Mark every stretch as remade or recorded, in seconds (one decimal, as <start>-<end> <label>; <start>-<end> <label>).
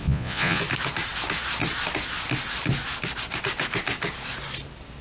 0.0-0.6 remade; 0.6-5.0 recorded